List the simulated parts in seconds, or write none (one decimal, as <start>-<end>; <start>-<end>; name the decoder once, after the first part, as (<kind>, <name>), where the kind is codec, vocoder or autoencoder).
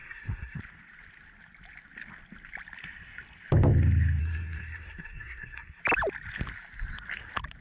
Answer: 0.0-0.6 (codec, SNAC); 4.2-5.8